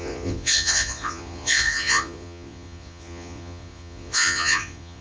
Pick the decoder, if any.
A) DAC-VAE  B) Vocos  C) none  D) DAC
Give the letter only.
B